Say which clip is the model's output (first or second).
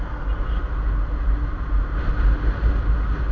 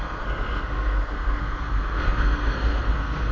second